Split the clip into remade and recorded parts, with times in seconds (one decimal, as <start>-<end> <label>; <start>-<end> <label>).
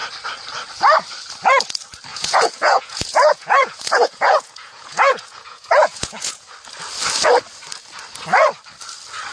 0.0-2.1 recorded; 2.1-6.5 remade; 6.5-9.3 recorded